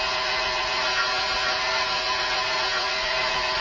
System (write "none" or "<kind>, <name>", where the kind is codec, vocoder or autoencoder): vocoder, Vocos